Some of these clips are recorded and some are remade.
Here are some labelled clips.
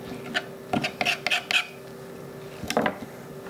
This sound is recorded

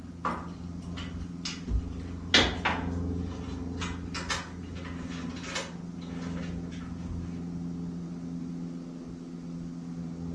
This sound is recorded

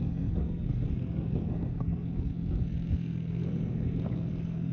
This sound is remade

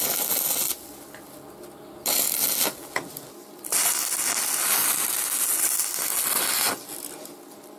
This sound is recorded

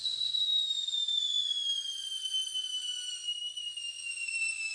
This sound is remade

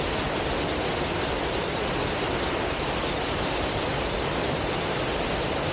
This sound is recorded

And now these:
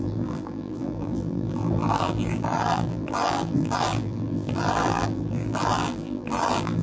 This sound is remade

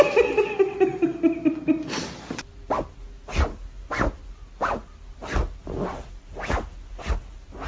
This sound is recorded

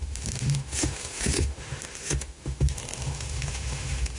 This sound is remade